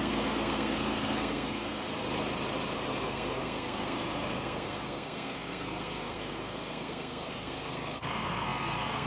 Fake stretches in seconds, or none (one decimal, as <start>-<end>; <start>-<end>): 0.0-1.8; 2.9-9.1